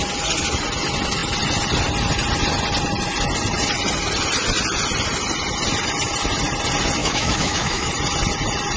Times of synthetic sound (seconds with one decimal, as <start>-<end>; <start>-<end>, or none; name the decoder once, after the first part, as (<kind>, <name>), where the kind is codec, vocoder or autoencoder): 7.0-7.9 (autoencoder, DAC-VAE)